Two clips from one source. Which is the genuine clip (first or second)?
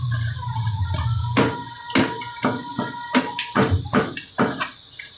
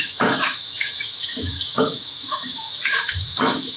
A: first